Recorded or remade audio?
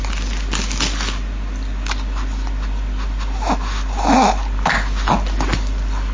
recorded